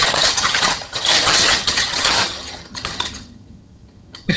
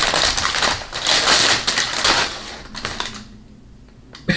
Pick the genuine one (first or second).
second